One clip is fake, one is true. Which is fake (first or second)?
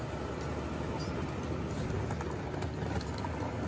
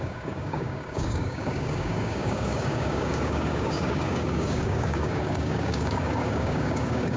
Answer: second